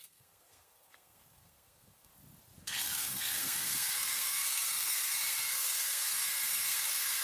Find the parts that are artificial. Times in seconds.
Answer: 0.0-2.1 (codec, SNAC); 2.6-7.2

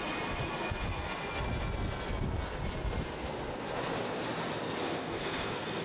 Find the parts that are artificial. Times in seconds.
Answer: 4.8-5.8 (codec, SNAC)